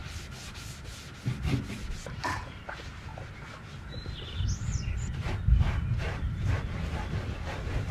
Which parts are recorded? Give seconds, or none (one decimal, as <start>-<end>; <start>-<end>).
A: 0.0-1.9; 3.1-6.0